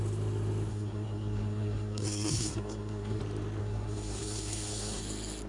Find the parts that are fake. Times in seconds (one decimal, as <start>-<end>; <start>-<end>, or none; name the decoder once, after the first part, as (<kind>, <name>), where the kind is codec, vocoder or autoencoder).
0.7-3.2 (codec, SNAC); 3.6-5.0

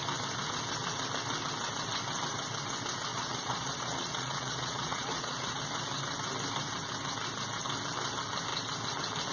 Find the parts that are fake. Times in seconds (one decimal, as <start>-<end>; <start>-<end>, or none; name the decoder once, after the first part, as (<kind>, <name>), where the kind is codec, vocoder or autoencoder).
3.1-5.6 (vocoder, Vocos)